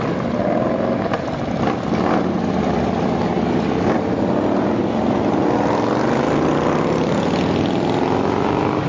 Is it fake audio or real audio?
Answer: real